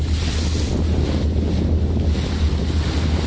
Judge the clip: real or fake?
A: real